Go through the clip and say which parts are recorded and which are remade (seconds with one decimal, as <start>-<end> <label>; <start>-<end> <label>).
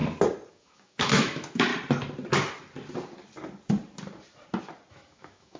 0.0-0.5 recorded; 0.5-1.7 remade; 1.7-4.9 recorded; 4.9-5.6 remade